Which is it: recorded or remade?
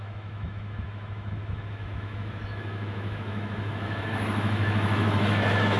remade